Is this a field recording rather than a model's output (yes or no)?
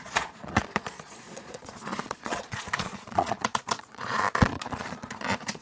no